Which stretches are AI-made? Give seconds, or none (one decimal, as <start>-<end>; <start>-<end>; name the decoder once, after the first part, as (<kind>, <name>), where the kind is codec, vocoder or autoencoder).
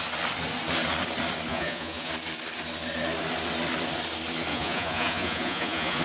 1.5-2.1 (vocoder, Vocos); 4.5-6.0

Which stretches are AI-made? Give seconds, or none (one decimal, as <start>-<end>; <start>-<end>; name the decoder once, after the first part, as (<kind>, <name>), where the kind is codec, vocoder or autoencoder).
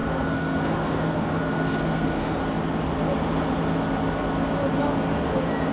0.0-2.4 (codec, SNAC)